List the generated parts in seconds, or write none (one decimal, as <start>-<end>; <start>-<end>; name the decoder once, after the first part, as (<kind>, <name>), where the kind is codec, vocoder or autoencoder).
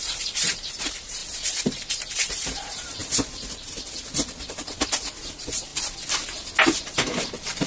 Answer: 0.0-1.2 (vocoder, BigVGAN v2); 1.7-3.0; 5.2-5.7; 6.8-7.7